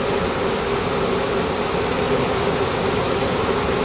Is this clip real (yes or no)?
yes